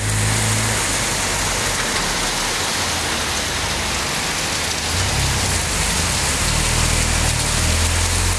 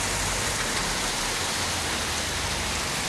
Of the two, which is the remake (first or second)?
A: second